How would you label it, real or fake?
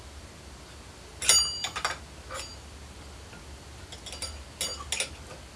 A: real